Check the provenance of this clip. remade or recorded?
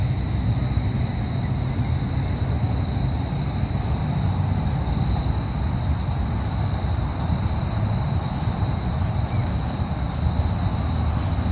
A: recorded